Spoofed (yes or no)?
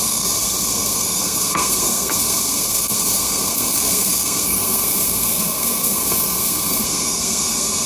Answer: yes